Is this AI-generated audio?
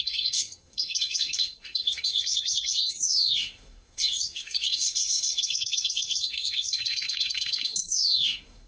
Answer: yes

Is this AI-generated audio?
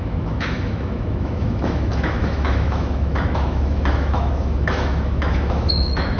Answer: yes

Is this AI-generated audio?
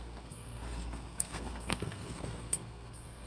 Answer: yes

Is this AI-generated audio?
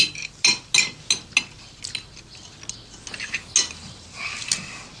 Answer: no